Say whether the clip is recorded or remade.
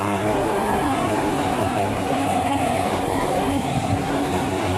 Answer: remade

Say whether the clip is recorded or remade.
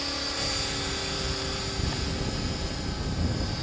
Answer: recorded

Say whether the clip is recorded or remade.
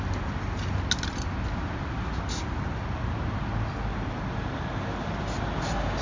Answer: recorded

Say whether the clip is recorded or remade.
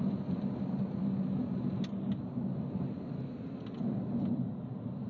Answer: recorded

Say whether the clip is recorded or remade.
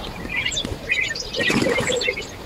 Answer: remade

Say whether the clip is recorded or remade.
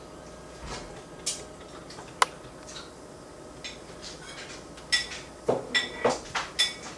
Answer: recorded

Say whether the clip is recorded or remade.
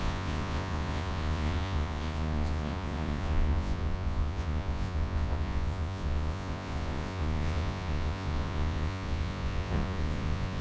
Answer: remade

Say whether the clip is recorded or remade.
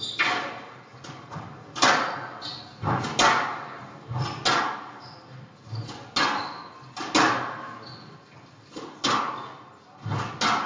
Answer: recorded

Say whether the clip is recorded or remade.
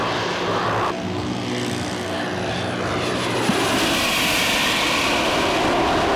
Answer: recorded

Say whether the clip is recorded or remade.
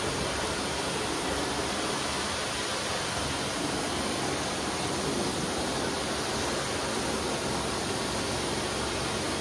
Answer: recorded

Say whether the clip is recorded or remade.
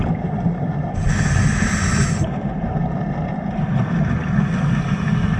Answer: recorded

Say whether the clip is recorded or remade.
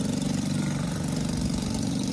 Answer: remade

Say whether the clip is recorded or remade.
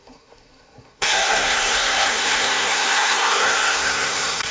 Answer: remade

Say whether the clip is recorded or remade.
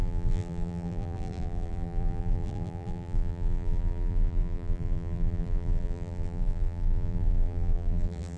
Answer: remade